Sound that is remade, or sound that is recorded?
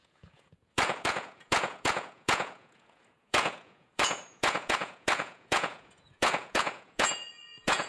remade